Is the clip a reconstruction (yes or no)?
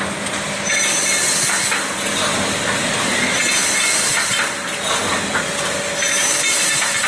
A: no